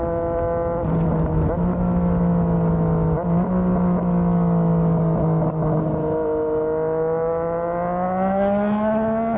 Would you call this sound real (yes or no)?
yes